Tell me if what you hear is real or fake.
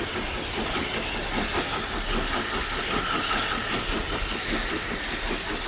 real